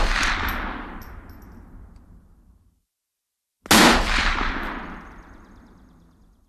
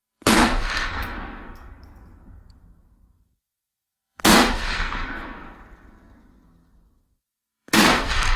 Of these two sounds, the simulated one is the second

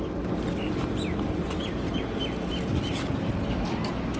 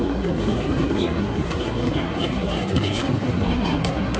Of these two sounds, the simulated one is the second